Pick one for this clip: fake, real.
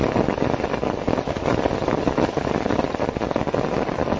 real